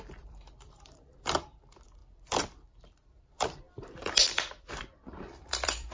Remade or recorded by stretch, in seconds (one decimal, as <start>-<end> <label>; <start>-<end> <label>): 0.0-5.9 remade